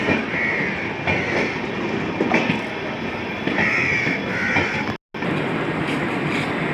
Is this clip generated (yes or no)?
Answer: no